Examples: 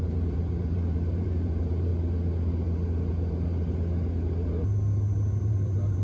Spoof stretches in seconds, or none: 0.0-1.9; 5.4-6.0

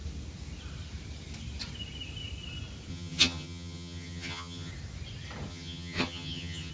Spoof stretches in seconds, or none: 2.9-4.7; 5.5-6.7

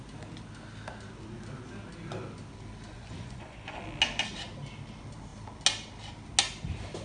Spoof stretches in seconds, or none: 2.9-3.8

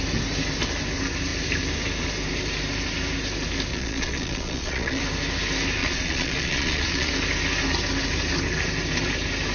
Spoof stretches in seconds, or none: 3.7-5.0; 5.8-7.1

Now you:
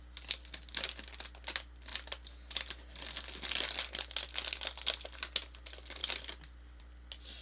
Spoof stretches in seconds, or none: none

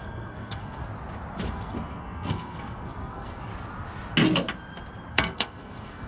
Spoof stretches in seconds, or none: 0.0-0.8; 1.5-3.5; 5.1-6.1